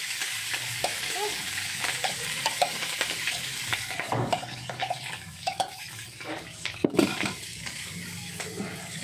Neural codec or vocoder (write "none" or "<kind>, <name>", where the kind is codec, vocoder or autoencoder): codec, DAC